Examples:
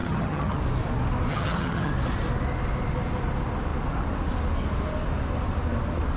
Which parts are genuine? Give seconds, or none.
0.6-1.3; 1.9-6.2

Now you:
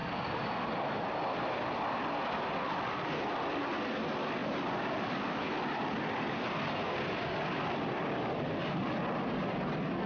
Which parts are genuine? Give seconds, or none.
0.0-10.1

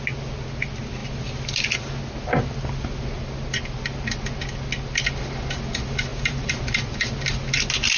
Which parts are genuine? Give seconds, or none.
0.0-6.1; 6.6-8.0